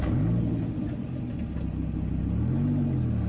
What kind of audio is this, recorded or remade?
recorded